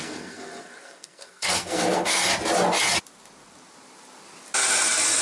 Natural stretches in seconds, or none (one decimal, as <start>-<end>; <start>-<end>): 2.3-5.2